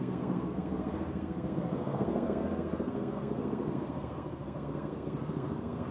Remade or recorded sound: remade